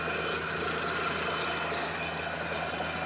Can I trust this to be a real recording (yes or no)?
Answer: yes